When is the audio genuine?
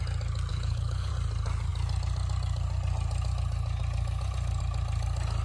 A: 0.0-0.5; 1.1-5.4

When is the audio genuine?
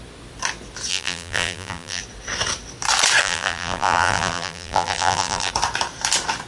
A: 0.0-0.9; 2.0-3.2; 5.5-6.5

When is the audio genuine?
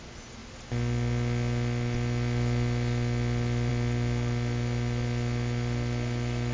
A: 0.0-6.5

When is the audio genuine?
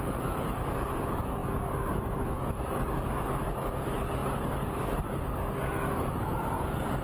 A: none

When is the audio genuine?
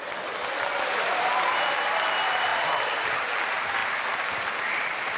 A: 0.0-5.2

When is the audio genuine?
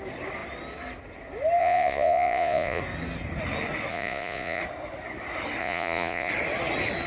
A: 0.0-1.6; 2.8-3.9; 4.6-5.6; 6.3-7.1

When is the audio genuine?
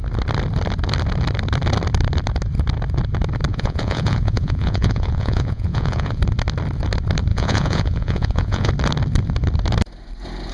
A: 0.0-3.5; 6.2-7.3; 8.7-10.5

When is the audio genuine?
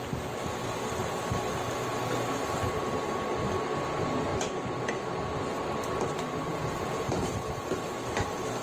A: 0.0-6.5; 7.1-8.6